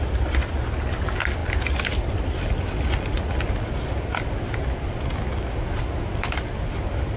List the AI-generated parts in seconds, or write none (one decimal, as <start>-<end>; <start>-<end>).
none